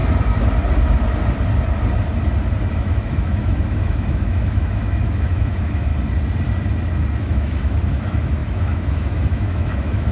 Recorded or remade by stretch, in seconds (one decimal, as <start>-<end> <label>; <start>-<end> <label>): 0.0-2.7 recorded; 2.7-5.9 remade; 5.9-7.2 recorded; 7.2-10.1 remade